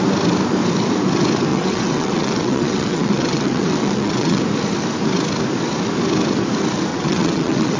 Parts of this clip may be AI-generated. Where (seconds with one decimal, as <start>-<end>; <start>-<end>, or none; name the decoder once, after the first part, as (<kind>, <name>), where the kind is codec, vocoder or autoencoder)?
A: 1.5-4.4 (vocoder, WaveNeXt); 6.9-7.8